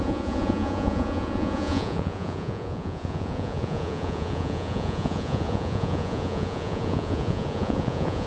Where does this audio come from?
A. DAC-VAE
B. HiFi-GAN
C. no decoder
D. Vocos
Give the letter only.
D